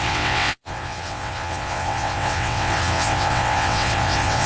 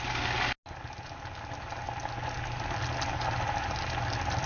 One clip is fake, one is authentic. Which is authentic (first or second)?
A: second